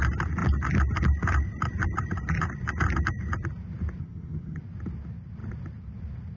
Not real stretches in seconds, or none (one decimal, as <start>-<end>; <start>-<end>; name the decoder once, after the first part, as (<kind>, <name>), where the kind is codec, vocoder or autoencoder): 4.0-4.6 (vocoder, HiFi-GAN)